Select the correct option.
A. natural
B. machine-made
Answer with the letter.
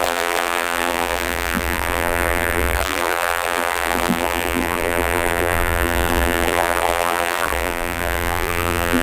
B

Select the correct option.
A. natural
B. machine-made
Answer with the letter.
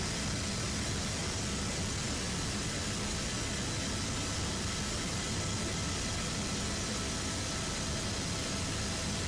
A